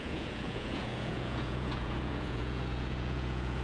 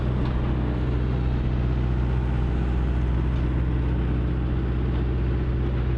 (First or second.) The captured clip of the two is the second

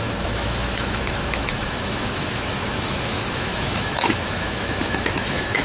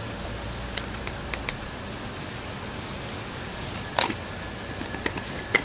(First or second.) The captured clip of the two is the second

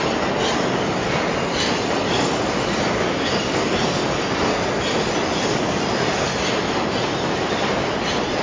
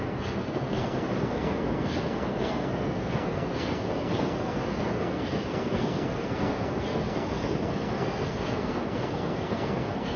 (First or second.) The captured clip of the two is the first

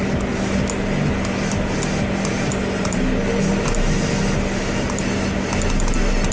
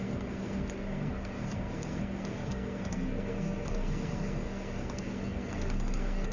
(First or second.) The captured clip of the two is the first